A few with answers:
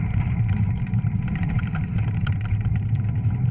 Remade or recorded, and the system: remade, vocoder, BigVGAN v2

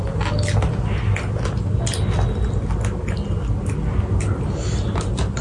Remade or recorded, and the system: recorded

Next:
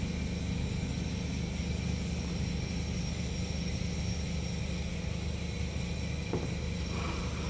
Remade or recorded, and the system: recorded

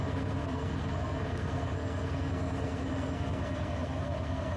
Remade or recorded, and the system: remade, codec, SNAC